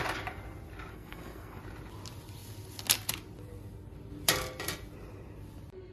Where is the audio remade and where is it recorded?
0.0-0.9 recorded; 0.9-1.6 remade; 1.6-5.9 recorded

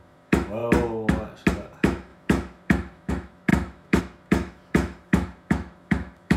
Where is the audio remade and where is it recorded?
0.0-0.6 remade; 0.6-1.5 recorded; 1.5-6.4 remade

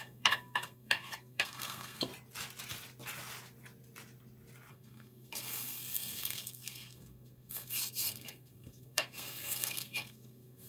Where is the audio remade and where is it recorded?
0.0-2.1 remade; 2.1-4.7 recorded; 4.7-10.7 remade

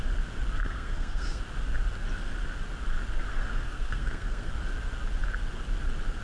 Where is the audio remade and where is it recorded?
0.0-0.6 recorded; 0.6-1.4 remade; 1.4-3.3 recorded; 3.3-4.5 remade; 4.5-6.2 recorded